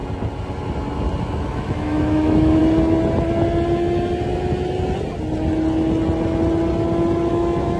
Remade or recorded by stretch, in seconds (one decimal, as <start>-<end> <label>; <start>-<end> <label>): 0.0-1.2 recorded; 1.2-2.6 remade; 2.6-7.3 recorded; 7.3-7.8 remade